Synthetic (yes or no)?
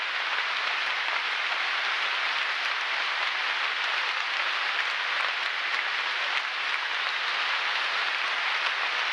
no